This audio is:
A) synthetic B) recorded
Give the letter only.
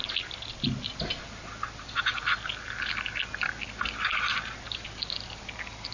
B